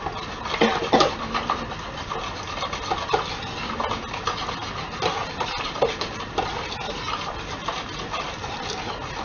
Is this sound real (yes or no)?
yes